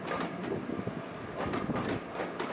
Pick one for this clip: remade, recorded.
recorded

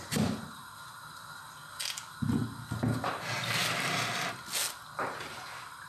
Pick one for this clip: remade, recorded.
recorded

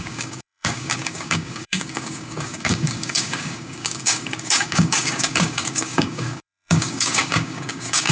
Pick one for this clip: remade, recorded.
remade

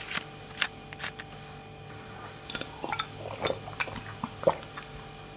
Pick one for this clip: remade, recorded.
recorded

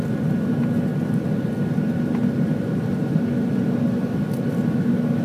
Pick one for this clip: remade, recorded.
recorded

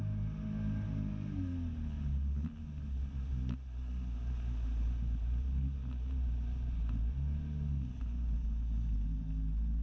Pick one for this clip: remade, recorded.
recorded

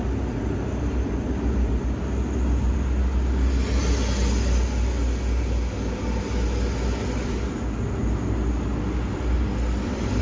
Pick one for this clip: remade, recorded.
recorded